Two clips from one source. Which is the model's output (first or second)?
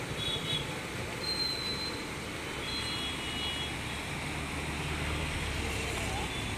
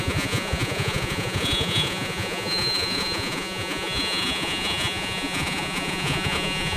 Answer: second